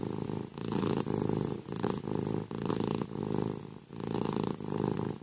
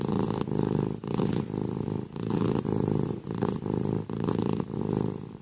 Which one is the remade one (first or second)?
second